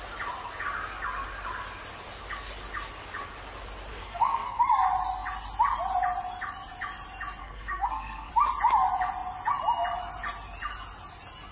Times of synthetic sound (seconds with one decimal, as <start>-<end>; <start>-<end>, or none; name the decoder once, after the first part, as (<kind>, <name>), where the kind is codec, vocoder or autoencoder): 3.9-4.6 (codec, SNAC); 7.4-8.3

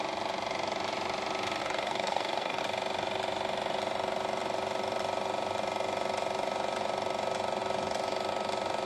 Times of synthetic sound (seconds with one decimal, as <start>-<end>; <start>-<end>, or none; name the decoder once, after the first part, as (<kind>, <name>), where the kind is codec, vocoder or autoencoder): 1.6-2.6 (codec, SNAC)

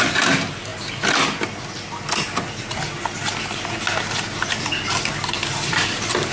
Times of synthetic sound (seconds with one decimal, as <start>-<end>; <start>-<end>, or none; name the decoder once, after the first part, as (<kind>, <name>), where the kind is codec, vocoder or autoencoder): none

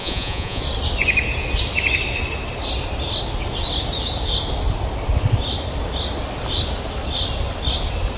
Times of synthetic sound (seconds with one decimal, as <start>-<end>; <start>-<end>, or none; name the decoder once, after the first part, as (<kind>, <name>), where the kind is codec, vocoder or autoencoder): 0.0-0.6 (vocoder, Vocos)

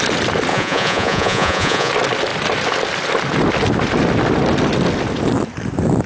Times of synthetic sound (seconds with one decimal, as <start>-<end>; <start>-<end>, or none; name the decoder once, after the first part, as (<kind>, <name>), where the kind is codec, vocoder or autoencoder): 0.5-1.9 (vocoder, Vocos)